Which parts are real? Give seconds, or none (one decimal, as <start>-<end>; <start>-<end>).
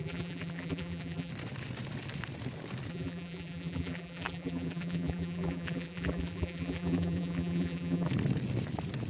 1.3-2.9; 8.1-9.1